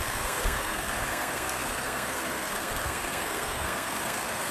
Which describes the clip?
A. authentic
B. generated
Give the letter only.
B